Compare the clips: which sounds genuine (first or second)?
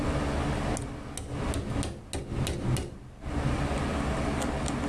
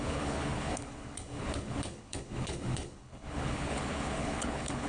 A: first